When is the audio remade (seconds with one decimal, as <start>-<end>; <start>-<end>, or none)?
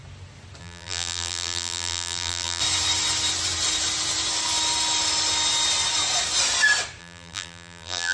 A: 0.6-2.6; 7.0-8.1